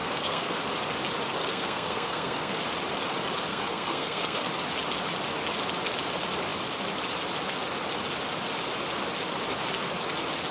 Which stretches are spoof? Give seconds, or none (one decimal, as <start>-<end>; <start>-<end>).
0.0-0.6; 1.4-2.6; 3.5-4.5